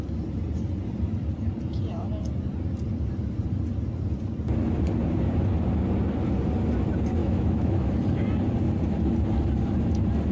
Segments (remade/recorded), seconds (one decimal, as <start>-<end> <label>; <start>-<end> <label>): 0.0-7.2 recorded; 7.2-7.9 remade; 7.9-10.3 recorded